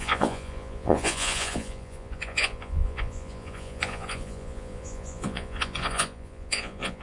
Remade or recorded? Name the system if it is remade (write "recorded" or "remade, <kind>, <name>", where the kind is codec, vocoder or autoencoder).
remade, vocoder, Vocos